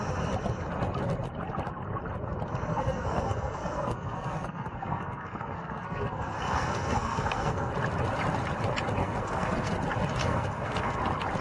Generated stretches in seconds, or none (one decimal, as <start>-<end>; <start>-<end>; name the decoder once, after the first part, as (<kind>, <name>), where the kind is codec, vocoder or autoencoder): 2.7-7.7 (codec, SNAC); 9.0-9.7; 10.2-11.0

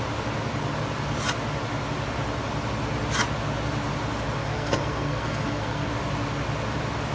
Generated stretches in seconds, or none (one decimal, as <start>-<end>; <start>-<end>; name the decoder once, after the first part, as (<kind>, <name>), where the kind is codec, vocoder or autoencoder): 4.4-5.9 (codec, SNAC)

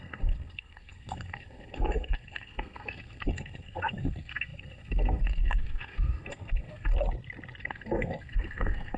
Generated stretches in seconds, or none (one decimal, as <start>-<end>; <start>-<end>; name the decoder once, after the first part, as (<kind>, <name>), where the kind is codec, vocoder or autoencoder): 0.0-6.9 (codec, SNAC); 7.6-9.0

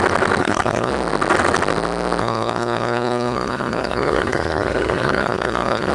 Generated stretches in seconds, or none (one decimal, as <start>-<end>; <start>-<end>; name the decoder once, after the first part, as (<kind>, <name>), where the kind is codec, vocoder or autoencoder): 0.4-0.9 (codec, SNAC); 2.2-5.9

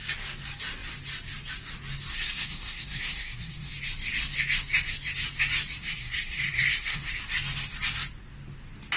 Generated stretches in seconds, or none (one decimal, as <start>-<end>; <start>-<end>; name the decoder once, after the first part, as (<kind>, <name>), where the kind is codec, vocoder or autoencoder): 2.1-3.7 (codec, SNAC); 5.8-7.1

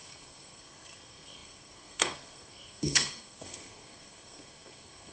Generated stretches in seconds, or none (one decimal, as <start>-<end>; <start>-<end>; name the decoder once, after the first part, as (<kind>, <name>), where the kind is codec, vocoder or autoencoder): 0.0-5.1 (codec, SNAC)

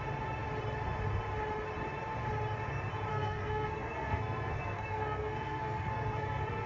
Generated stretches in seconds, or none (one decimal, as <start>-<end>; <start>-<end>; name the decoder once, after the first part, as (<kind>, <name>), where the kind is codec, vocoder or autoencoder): 3.1-6.7 (codec, SNAC)

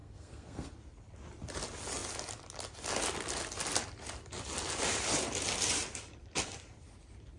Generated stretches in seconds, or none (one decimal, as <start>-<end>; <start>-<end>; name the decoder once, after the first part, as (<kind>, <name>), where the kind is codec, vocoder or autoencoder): 0.0-0.7 (codec, SNAC)